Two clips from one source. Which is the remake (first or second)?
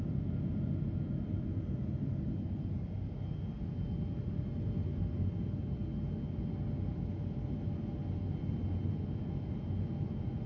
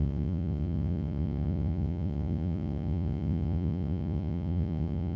second